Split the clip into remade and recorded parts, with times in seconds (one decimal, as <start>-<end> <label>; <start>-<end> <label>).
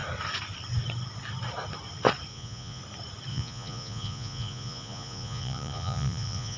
0.0-2.3 recorded; 2.3-2.8 remade; 2.8-3.3 recorded; 3.3-6.6 remade